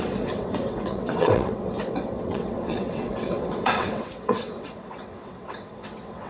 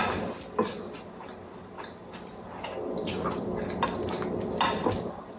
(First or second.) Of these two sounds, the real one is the second